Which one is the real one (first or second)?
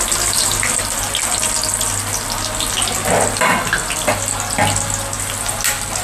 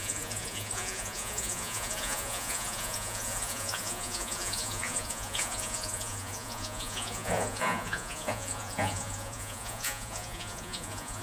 first